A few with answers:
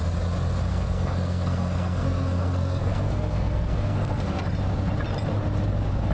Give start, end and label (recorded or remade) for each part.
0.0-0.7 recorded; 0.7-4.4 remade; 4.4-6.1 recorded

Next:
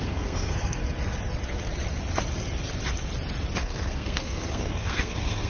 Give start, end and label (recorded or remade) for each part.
0.0-0.8 remade; 0.8-3.6 recorded; 3.6-5.5 remade